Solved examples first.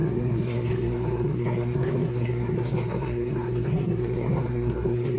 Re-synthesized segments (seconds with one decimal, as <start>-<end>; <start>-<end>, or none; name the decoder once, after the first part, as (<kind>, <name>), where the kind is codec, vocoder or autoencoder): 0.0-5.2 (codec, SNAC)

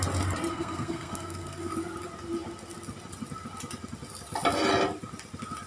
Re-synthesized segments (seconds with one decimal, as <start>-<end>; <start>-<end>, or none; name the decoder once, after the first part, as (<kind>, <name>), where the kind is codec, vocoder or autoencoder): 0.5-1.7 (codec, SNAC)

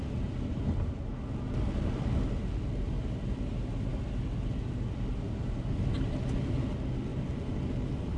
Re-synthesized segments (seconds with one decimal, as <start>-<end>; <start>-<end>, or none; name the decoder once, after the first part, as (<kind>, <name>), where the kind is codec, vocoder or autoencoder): none

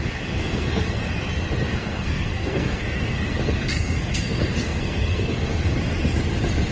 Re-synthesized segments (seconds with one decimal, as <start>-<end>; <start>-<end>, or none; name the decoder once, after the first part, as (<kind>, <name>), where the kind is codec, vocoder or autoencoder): 0.4-1.1 (codec, SNAC); 1.7-5.7